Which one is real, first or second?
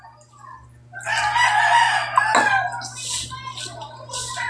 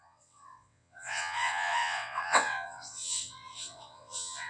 first